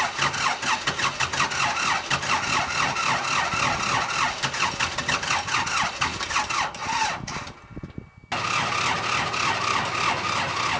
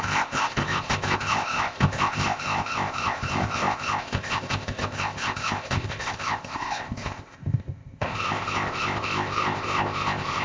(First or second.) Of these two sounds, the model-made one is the second